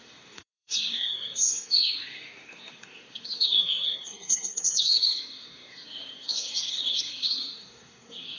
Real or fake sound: fake